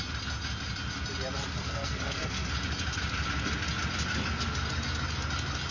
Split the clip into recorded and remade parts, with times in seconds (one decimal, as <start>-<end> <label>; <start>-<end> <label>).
0.0-1.6 recorded; 1.6-2.5 remade; 2.5-5.7 recorded